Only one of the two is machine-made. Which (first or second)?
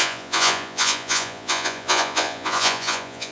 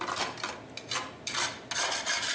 first